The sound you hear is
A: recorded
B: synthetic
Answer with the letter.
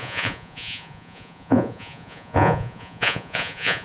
B